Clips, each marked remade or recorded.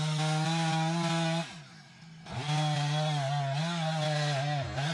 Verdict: recorded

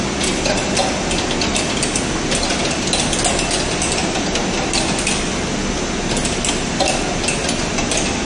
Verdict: recorded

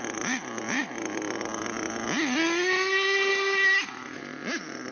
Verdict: recorded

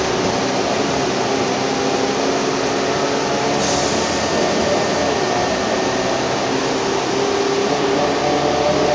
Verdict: recorded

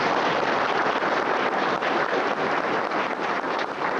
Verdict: recorded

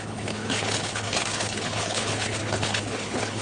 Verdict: remade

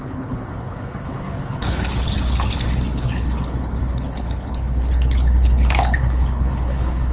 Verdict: remade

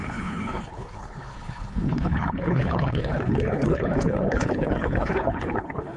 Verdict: remade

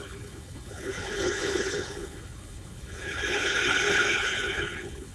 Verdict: remade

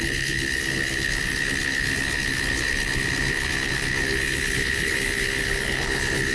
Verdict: remade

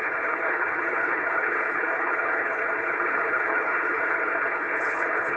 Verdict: remade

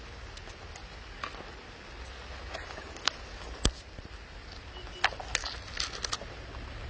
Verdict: recorded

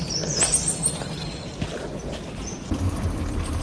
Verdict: recorded